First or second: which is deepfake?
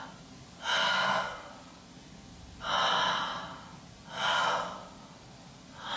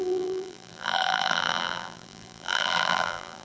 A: second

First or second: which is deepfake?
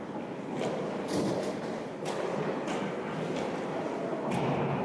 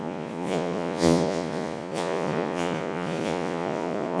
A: second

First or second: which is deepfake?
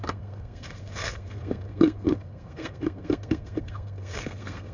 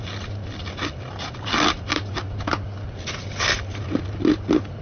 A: first